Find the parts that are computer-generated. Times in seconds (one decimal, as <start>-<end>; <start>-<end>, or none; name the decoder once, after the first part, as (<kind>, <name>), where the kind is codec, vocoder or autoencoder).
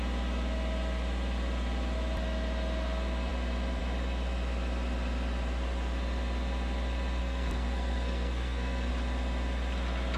7.2-8.9 (codec, SNAC)